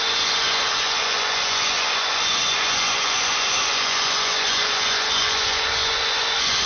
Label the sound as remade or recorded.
remade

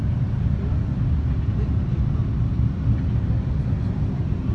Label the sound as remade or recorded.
recorded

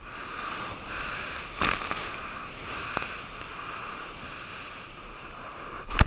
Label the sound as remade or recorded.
recorded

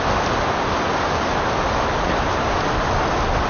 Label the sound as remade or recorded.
recorded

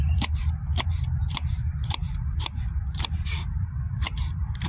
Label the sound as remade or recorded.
remade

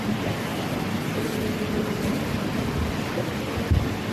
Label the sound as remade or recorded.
remade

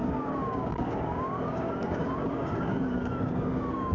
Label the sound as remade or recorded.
remade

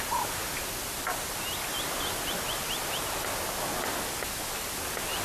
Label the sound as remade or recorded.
recorded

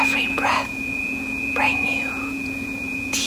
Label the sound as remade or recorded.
remade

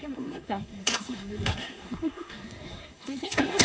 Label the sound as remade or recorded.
remade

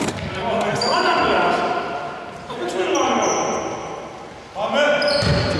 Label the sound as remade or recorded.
recorded